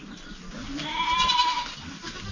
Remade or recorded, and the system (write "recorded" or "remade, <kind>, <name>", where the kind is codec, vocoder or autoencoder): recorded